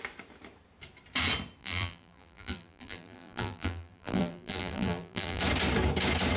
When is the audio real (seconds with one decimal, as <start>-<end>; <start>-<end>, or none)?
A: 0.0-1.6; 5.4-6.4